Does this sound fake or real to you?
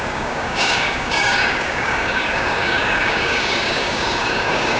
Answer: fake